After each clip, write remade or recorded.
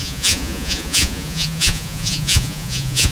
remade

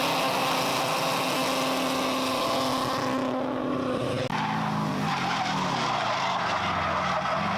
recorded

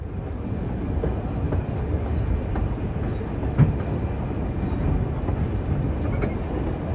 recorded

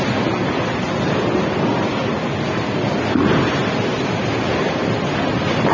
recorded